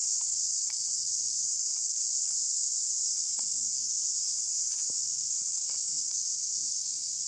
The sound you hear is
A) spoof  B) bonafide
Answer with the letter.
A